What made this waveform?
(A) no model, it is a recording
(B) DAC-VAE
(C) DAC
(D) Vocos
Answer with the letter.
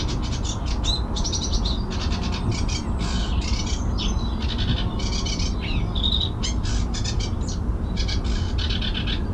A